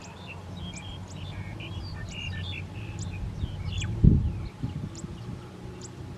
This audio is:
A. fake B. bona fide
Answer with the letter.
B